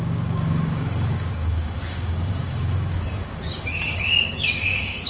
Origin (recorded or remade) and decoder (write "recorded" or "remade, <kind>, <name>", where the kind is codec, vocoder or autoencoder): remade, codec, DAC